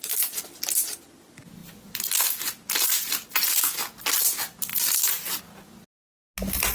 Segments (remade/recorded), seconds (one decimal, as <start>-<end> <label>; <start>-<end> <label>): 0.0-4.7 recorded; 4.7-5.4 remade; 5.4-6.7 recorded